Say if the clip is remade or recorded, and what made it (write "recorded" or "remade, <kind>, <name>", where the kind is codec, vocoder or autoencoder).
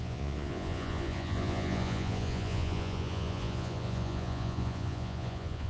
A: remade, vocoder, Vocos